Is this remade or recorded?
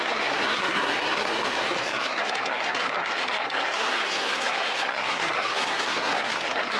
remade